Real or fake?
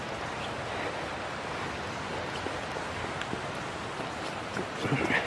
real